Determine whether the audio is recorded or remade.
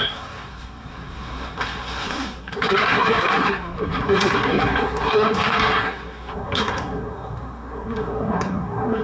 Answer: remade